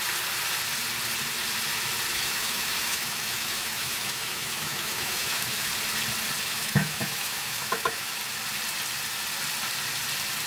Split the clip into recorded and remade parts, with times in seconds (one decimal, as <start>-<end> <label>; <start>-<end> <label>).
0.0-2.1 recorded; 2.1-5.7 remade; 5.7-6.4 recorded; 6.4-8.2 remade; 8.2-10.5 recorded